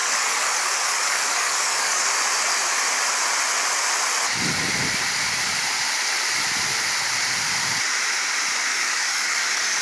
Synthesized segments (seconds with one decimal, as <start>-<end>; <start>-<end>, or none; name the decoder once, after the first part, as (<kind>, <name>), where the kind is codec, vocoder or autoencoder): 0.0-2.1 (codec, DAC); 8.7-9.8